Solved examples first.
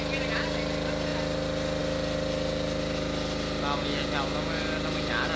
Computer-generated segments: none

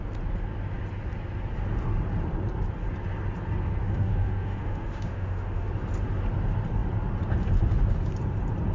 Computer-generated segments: 3.8-5.7 (autoencoder, DAC-VAE)